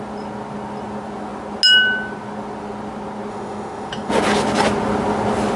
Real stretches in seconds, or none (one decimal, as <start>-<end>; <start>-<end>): 0.0-3.3; 4.1-5.6